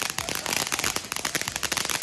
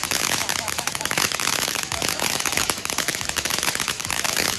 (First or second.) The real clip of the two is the first